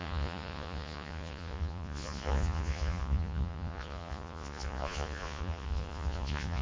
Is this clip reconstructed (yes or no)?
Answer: yes